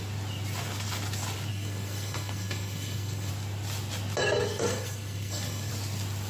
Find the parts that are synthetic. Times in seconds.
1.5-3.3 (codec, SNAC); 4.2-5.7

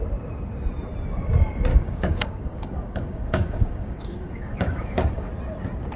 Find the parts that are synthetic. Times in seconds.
1.7-5.3 (codec, DAC)